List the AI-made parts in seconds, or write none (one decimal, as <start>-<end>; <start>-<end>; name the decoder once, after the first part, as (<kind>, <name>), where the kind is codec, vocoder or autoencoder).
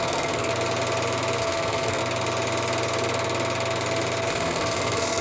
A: 0.0-0.5 (codec, SNAC); 1.4-2.0; 4.3-5.2